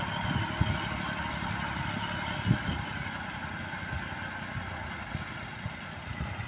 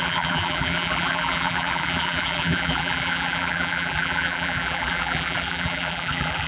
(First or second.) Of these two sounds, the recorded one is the first